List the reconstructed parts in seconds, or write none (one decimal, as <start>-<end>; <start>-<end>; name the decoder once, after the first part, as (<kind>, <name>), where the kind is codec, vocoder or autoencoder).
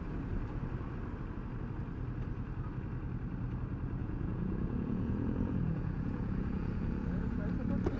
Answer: 4.0-7.4 (vocoder, Vocos)